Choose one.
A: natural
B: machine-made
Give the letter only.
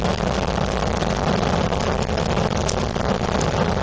A